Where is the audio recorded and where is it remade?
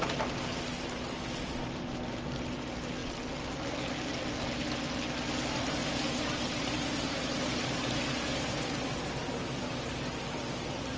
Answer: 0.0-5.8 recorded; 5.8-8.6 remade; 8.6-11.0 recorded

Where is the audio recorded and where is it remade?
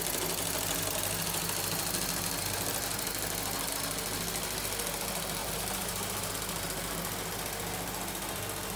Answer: 0.0-5.4 recorded; 5.4-6.3 remade; 6.3-8.8 recorded